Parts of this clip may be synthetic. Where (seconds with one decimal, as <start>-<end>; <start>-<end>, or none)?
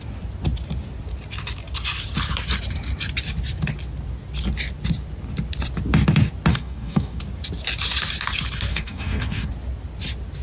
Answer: 6.5-7.2; 8.7-9.5